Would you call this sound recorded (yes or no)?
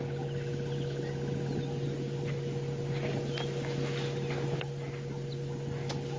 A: yes